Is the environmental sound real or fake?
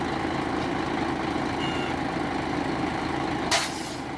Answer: real